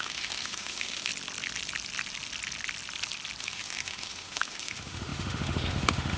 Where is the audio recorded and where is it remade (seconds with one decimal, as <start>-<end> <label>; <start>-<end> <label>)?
0.0-1.1 remade; 1.1-3.4 recorded; 3.4-6.2 remade